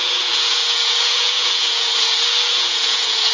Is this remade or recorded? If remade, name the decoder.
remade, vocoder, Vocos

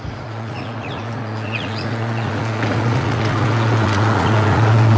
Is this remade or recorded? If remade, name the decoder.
remade, vocoder, Vocos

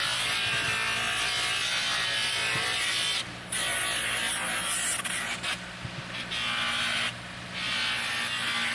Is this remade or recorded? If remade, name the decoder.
recorded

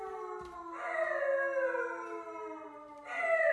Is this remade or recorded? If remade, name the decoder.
recorded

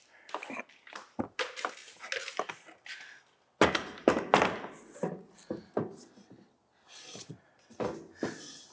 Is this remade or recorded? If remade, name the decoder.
recorded